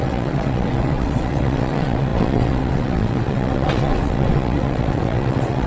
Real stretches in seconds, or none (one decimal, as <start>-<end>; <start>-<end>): none